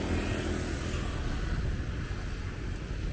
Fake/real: real